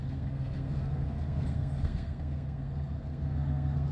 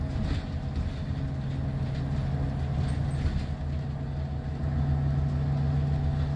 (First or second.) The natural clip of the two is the second